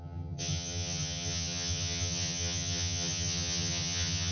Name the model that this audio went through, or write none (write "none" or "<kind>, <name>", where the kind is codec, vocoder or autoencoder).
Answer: vocoder, HiFi-GAN